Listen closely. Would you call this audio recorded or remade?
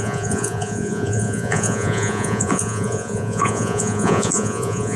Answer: remade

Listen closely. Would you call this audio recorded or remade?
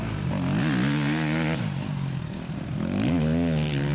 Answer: recorded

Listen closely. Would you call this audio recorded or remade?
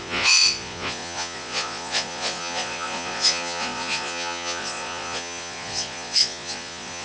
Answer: remade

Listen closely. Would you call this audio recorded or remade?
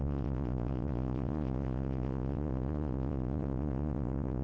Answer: remade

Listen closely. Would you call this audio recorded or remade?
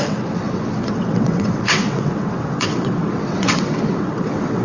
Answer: remade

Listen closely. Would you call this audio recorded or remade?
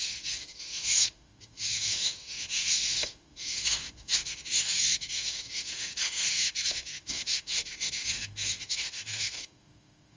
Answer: remade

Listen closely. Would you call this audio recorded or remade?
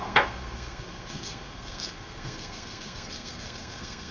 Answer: remade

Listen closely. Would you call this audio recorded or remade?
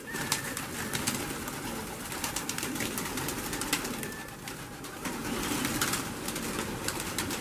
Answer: recorded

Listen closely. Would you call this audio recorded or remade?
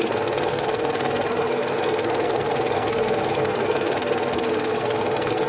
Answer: remade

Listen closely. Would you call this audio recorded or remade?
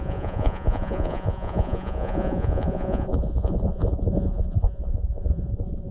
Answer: remade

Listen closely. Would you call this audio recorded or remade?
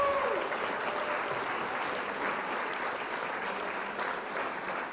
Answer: recorded